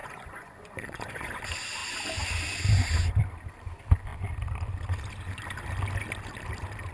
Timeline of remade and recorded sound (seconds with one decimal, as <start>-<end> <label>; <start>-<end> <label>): 0.0-1.4 remade; 1.4-6.9 recorded